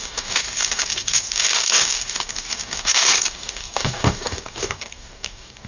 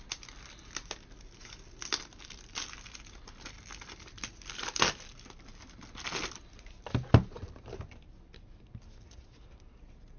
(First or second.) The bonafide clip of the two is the second